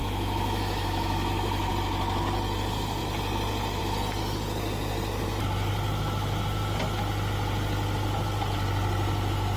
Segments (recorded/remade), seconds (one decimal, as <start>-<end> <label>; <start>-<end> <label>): 0.0-1.7 remade; 1.7-9.6 recorded